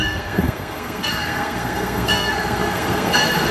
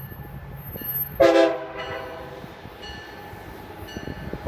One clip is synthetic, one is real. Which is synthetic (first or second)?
first